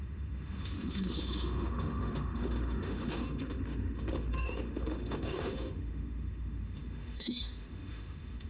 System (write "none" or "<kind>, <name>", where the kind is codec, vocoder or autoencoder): autoencoder, DAC-VAE